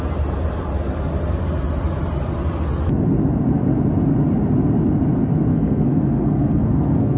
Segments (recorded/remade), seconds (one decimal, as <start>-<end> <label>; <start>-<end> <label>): 0.0-5.5 recorded; 5.5-7.2 remade